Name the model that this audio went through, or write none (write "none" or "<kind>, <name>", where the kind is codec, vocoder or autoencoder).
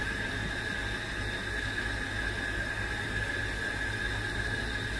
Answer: none